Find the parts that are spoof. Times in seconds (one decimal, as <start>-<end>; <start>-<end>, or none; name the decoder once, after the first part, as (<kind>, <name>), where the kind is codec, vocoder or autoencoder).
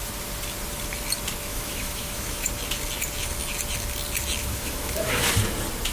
1.5-2.5 (autoencoder, DAC-VAE); 4.4-5.3